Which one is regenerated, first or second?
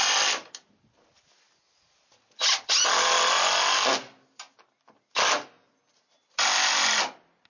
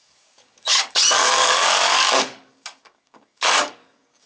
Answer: second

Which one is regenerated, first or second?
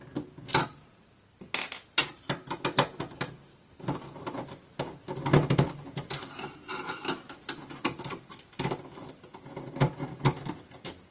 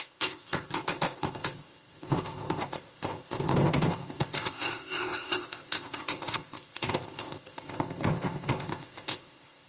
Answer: second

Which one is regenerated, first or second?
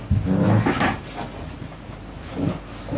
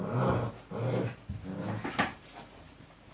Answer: second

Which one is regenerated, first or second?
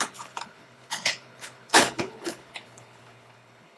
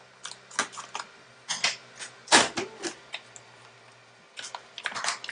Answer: first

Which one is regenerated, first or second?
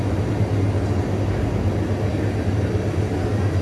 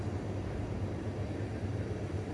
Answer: second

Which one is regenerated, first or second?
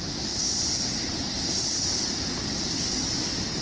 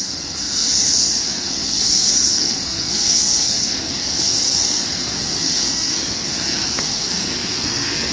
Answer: second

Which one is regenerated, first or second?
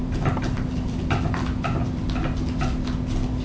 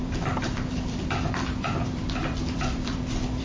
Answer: second